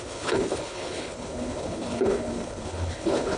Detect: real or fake fake